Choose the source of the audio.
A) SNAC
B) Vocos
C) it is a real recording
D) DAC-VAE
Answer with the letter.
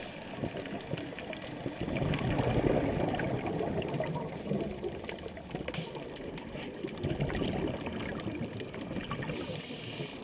C